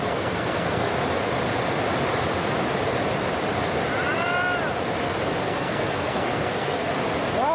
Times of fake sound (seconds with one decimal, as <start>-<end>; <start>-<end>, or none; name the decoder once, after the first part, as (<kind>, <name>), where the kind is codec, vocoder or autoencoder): 0.0-0.9 (codec, SNAC); 5.4-6.9